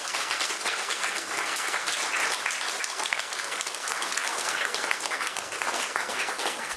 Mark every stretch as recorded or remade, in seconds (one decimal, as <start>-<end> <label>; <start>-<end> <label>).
0.0-2.0 remade; 2.0-2.8 recorded; 2.8-6.8 remade